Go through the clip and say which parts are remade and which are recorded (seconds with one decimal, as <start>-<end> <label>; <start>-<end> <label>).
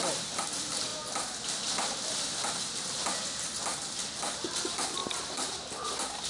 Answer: 0.0-6.3 recorded